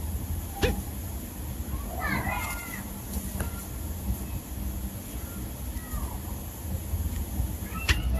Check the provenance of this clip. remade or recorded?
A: recorded